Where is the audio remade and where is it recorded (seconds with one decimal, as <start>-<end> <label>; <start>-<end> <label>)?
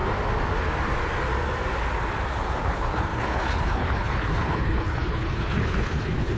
0.0-2.6 recorded; 2.6-6.4 remade